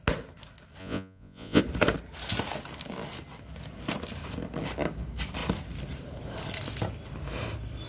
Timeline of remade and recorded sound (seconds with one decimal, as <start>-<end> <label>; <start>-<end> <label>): 0.0-0.8 recorded; 0.8-1.6 remade; 1.6-7.9 recorded